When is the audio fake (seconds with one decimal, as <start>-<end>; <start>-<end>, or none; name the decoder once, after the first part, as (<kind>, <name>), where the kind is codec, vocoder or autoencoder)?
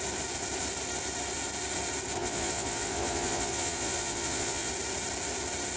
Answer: 2.2-4.7 (vocoder, Vocos)